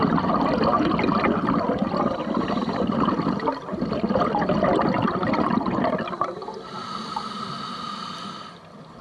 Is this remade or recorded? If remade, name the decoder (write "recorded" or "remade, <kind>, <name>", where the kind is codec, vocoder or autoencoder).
recorded